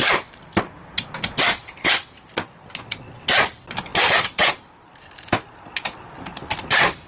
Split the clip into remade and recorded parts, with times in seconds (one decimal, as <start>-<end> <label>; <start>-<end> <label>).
0.0-7.1 recorded